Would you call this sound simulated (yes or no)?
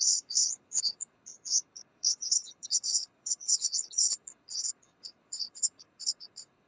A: yes